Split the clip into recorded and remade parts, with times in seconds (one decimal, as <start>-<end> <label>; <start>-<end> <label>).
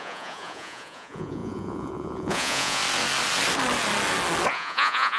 0.0-2.8 remade; 2.8-4.5 recorded; 4.5-5.2 remade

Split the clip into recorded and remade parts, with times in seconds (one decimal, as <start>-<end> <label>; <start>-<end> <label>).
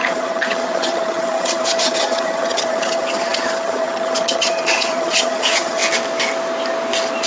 0.0-5.8 remade; 5.8-7.3 recorded